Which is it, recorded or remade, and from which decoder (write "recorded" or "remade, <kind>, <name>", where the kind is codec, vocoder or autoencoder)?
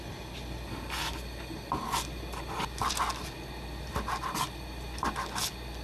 recorded